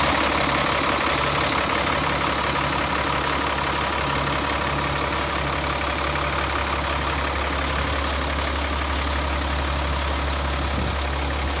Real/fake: real